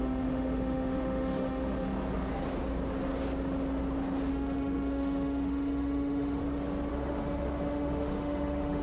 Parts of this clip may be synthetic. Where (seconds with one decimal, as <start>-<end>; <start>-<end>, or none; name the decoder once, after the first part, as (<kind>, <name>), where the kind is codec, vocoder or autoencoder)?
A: 0.0-2.3 (autoencoder, DAC-VAE); 4.3-6.4; 6.9-8.8